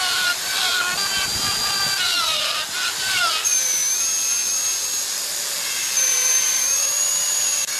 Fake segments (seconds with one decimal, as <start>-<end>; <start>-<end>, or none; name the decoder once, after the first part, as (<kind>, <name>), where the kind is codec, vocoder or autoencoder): 0.0-0.7 (vocoder, BigVGAN v2); 2.2-3.8; 5.8-7.8